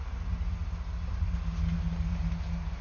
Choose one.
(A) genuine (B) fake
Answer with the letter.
A